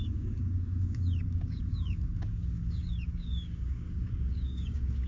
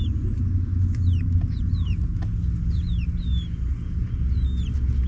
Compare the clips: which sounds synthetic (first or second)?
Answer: first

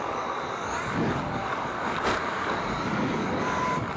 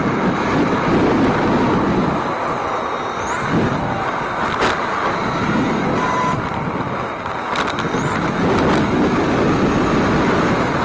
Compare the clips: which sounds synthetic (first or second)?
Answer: first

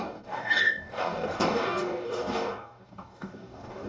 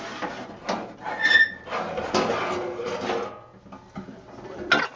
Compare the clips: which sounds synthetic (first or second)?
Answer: first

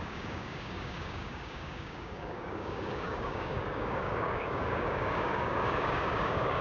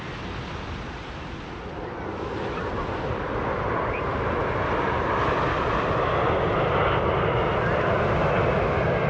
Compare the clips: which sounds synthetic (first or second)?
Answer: first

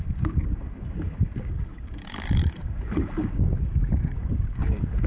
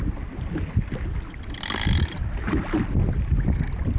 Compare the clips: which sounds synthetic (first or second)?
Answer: first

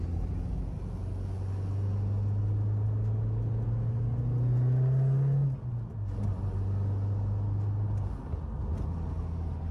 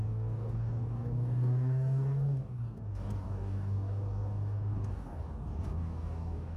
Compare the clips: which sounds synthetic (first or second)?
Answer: second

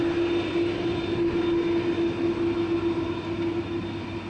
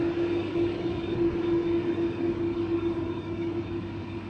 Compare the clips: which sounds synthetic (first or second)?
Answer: second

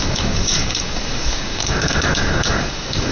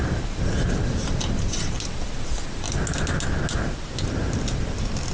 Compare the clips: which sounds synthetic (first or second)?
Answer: first